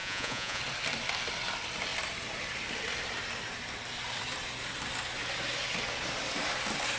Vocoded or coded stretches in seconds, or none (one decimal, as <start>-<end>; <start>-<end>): 0.0-0.6